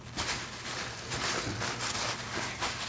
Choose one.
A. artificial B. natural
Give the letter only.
B